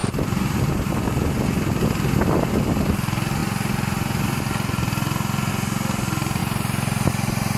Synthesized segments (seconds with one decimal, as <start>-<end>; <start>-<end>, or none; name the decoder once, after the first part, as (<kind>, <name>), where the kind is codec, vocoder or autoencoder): 0.0-0.9 (vocoder, BigVGAN v2); 6.4-7.6